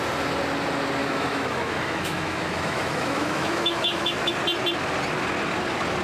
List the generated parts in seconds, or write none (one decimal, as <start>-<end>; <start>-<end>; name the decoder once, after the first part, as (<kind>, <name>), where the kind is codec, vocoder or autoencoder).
1.0-4.3 (autoencoder, DAC-VAE)